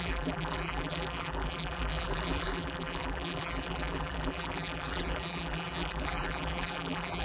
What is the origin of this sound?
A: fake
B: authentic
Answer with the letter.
A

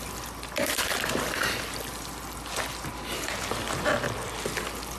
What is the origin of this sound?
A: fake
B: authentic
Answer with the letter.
B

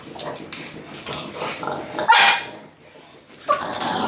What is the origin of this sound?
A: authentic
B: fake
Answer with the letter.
A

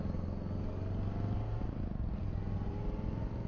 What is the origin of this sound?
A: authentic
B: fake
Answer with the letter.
A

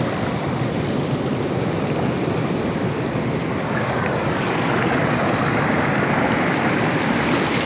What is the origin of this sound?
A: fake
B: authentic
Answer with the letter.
B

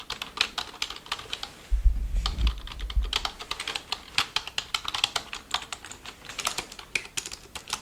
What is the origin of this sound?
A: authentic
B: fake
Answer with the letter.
A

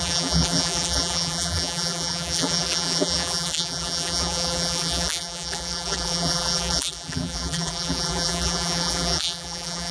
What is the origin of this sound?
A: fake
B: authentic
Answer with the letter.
A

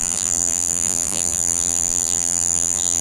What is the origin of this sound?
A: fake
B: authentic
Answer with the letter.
A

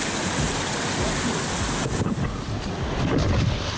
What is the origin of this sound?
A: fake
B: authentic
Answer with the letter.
B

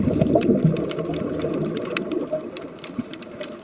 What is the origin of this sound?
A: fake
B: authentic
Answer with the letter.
A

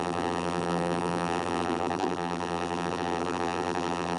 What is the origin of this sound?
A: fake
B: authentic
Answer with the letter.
A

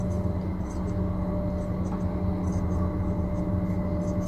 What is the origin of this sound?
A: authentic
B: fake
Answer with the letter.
A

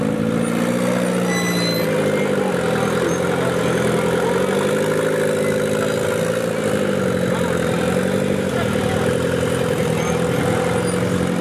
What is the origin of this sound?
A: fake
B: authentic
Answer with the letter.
B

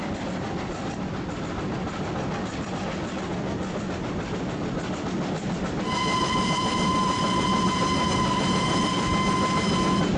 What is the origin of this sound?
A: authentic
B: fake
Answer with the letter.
A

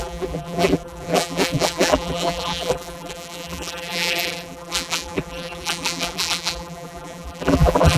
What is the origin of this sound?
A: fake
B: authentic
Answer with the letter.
A